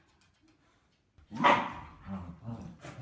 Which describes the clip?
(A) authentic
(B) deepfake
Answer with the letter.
A